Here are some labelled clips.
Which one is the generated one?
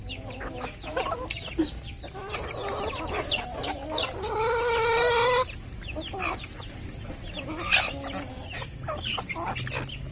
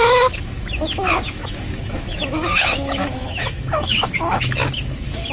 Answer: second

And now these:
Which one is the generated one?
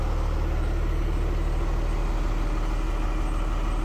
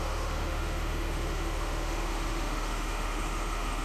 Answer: second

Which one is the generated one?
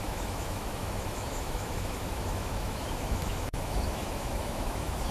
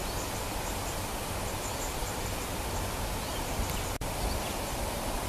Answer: first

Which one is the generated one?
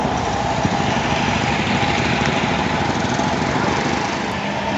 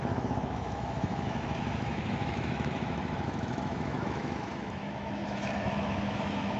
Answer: second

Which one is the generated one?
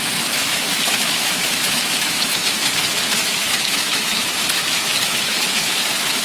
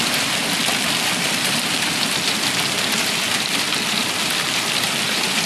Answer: first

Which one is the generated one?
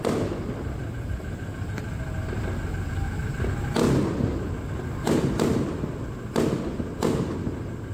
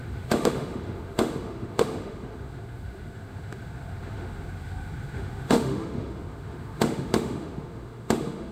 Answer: second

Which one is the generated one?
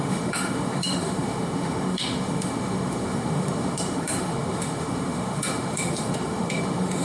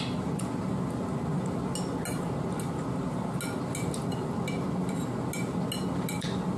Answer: first